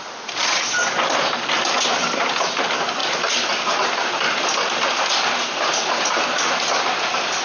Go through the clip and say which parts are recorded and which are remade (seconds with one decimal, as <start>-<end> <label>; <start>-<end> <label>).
0.0-7.4 recorded